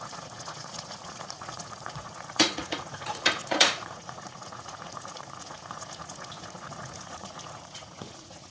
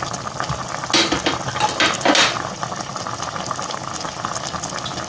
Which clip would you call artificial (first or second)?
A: first